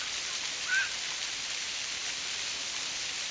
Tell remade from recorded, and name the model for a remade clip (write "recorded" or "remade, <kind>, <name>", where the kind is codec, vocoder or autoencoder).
recorded